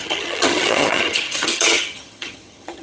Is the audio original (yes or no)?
no